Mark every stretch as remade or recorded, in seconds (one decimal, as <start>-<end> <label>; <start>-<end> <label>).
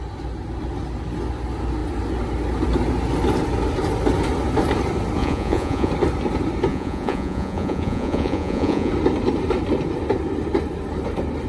0.0-5.2 recorded; 5.2-5.9 remade; 5.9-6.7 recorded; 6.7-8.9 remade; 8.9-11.5 recorded